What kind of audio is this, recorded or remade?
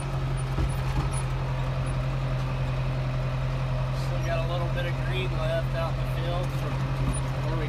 recorded